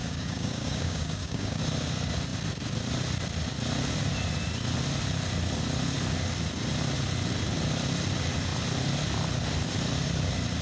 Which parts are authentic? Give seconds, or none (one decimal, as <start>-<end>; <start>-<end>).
1.6-10.6